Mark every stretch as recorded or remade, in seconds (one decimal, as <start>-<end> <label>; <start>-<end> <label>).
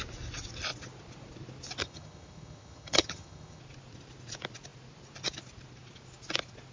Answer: 0.0-1.8 recorded; 1.8-3.6 remade; 3.6-6.7 recorded